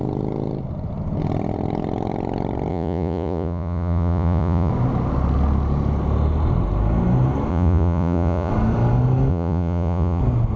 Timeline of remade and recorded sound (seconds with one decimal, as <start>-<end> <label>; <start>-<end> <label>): 0.0-2.7 recorded; 2.7-4.7 remade; 4.7-7.5 recorded; 7.5-8.5 remade; 8.5-9.3 recorded; 9.3-10.2 remade; 10.2-10.6 recorded